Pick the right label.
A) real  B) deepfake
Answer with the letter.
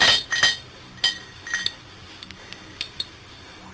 A